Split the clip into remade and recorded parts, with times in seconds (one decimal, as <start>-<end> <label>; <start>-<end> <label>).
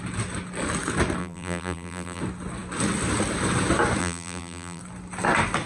0.0-1.2 recorded; 1.2-2.2 remade; 2.2-4.0 recorded; 4.0-4.8 remade; 4.8-5.7 recorded